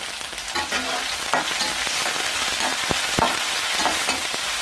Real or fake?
real